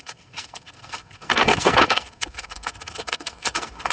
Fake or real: fake